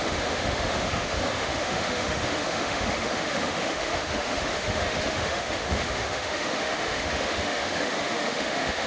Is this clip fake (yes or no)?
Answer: yes